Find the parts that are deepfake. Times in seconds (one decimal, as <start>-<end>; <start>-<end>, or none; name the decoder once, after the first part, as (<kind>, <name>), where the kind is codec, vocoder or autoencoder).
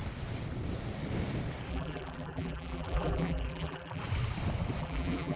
1.7-4.0 (vocoder, BigVGAN v2); 4.8-5.4